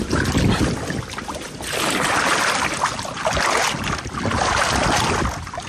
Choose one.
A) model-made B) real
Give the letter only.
B